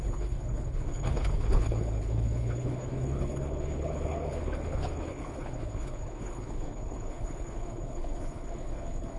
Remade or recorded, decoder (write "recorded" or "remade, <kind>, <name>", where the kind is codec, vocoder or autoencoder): remade, codec, HILCodec